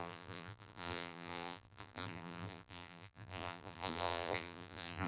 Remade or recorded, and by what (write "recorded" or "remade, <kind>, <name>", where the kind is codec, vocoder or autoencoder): remade, vocoder, BigVGAN v2